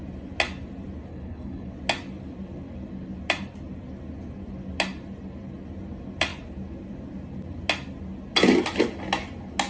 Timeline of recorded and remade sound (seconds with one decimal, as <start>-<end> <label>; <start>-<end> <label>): 0.0-1.1 recorded; 1.1-1.7 remade; 1.7-9.7 recorded